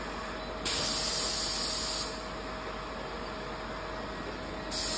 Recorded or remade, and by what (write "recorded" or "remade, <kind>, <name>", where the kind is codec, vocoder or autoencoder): recorded